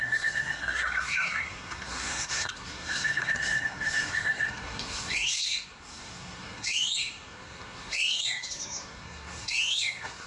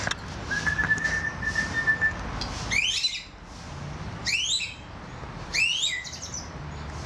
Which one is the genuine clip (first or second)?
second